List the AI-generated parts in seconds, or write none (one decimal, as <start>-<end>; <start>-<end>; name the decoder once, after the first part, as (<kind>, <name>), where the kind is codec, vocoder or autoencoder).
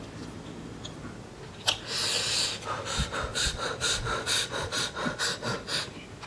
3.3-5.2 (vocoder, Vocos)